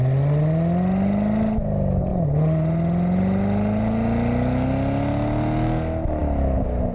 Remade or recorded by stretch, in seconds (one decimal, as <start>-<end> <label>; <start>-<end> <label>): 0.0-6.9 recorded